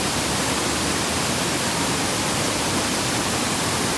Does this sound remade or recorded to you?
recorded